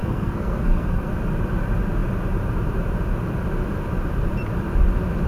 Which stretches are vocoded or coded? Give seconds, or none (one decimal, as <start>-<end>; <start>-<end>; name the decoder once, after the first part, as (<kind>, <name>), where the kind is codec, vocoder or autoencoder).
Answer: 0.0-1.1 (codec, SNAC)